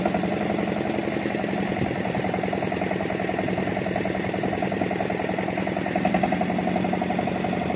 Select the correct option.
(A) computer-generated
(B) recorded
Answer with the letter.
B